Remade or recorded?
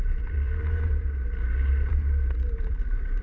remade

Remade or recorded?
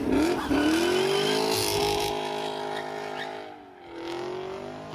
recorded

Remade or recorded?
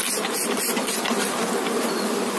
remade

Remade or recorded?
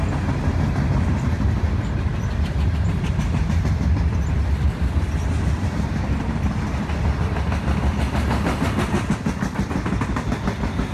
recorded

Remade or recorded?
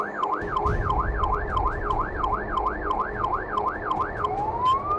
recorded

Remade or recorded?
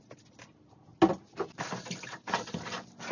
recorded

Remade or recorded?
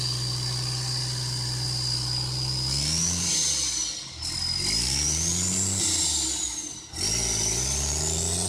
recorded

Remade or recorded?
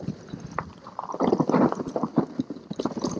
recorded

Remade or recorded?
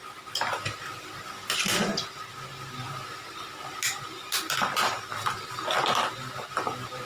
recorded